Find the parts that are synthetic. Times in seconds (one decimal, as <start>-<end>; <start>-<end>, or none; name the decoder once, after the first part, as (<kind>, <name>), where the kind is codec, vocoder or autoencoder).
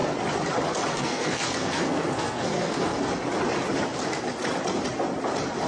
0.9-3.1 (codec, SNAC)